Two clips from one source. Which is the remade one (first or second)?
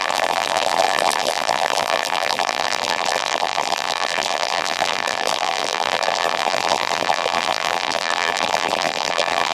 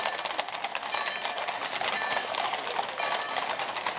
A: first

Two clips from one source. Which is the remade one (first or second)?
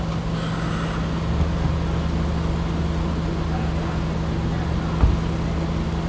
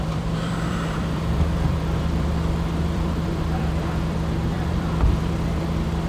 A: second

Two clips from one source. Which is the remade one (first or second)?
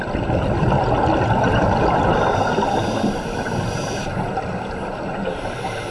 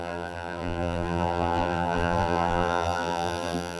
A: second